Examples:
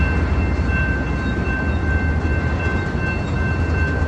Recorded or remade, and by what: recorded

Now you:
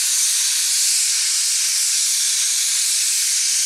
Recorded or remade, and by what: recorded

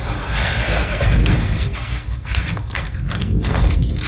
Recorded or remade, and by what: remade, codec, SNAC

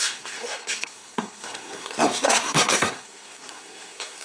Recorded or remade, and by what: remade, codec, SNAC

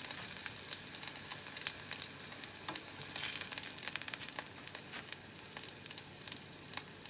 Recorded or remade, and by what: recorded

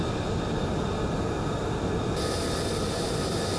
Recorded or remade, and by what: recorded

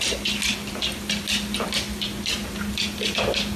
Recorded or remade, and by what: recorded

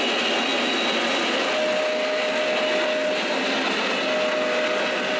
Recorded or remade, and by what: recorded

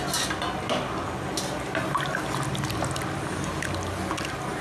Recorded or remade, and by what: recorded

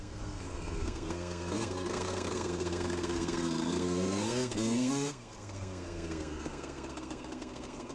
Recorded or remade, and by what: remade, codec, SNAC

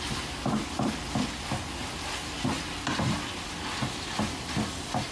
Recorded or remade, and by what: recorded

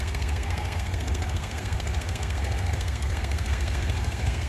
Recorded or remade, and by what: remade, codec, SNAC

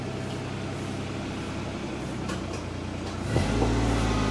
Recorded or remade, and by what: recorded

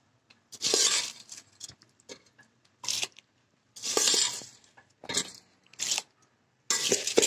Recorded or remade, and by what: recorded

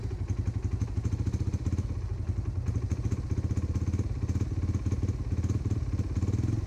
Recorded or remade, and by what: recorded